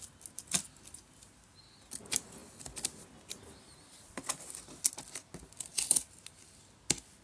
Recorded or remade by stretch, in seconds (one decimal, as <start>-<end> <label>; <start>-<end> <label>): 0.0-7.2 recorded